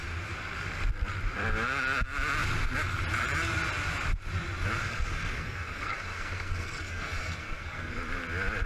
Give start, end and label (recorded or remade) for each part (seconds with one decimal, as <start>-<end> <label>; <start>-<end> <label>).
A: 0.0-4.8 recorded; 4.8-7.9 remade; 7.9-8.7 recorded